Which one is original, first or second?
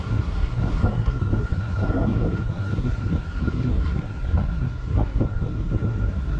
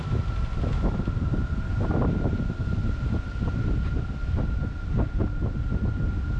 second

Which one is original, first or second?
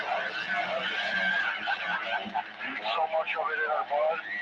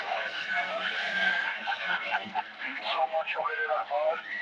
first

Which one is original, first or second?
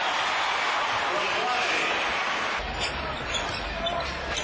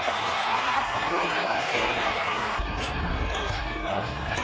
first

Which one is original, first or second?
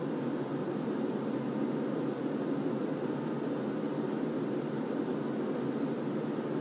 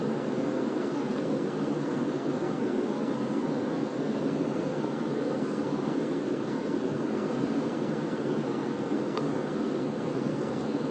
first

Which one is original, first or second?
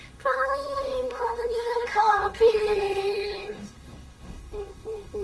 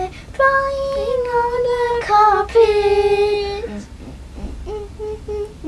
second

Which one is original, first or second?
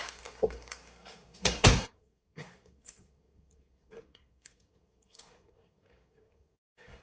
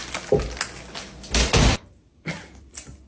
second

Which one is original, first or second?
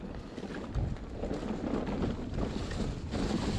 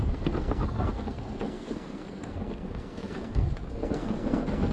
first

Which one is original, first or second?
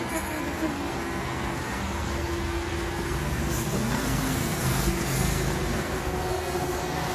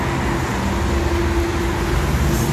second